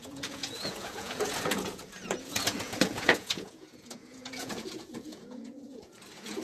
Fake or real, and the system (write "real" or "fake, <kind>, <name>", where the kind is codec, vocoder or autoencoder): fake, vocoder, Vocos